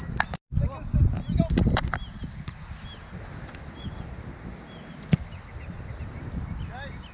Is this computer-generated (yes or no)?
no